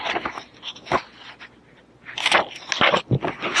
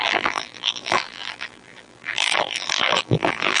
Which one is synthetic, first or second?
second